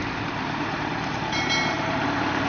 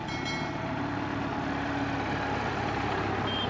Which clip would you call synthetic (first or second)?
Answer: first